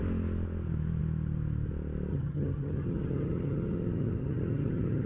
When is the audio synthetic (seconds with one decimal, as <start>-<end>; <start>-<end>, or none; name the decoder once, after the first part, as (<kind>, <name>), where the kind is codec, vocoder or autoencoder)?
2.1-5.1 (vocoder, HiFi-GAN)